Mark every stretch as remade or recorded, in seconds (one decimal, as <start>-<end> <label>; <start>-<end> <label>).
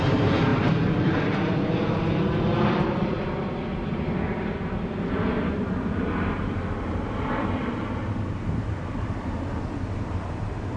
0.0-10.8 recorded